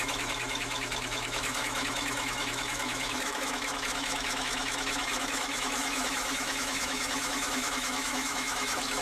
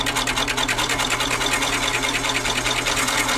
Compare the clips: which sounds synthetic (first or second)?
first